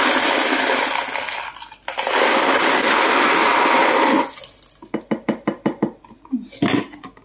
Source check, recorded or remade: recorded